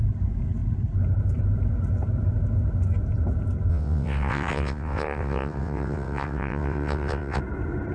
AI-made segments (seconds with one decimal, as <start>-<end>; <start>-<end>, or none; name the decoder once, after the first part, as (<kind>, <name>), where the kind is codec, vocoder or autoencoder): 3.7-7.4 (vocoder, WaveNeXt)